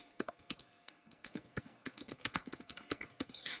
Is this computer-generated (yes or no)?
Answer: yes